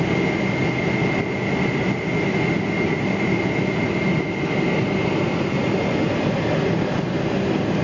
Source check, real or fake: real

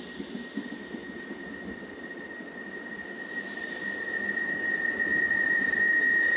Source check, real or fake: real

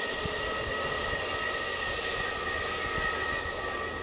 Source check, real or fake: real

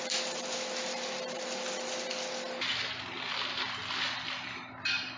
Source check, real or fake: real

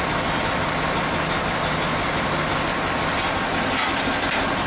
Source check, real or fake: real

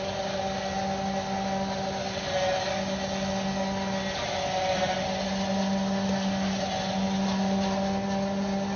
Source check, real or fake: real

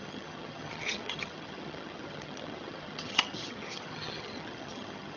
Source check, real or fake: fake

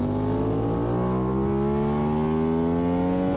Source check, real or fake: real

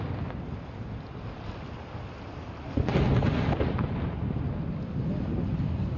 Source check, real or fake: real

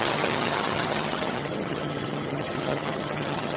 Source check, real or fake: fake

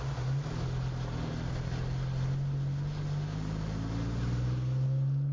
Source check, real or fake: real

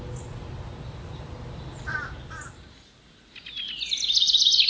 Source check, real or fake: real